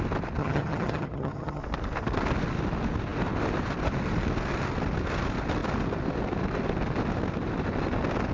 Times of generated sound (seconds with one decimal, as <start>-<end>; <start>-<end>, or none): 0.4-1.6